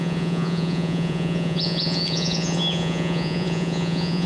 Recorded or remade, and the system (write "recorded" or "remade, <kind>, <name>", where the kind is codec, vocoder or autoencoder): remade, vocoder, Vocos